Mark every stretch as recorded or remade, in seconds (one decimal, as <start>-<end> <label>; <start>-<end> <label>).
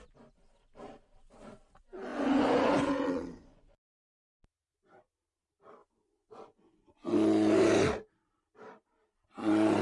0.0-2.1 recorded; 2.1-4.2 remade; 4.2-5.8 recorded; 5.8-7.1 remade; 7.1-9.8 recorded